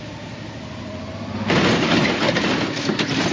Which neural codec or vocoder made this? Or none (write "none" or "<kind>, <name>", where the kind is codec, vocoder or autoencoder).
none